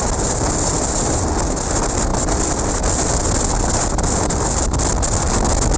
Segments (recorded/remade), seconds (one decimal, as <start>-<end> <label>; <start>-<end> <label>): 0.0-5.8 recorded